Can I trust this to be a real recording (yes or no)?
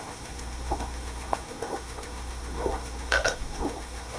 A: no